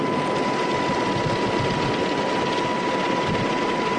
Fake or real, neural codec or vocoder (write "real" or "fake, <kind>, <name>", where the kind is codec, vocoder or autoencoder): real